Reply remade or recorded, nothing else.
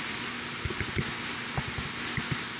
recorded